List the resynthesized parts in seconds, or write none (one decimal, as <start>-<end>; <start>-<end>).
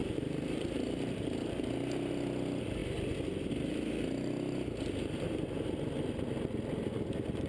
0.0-2.1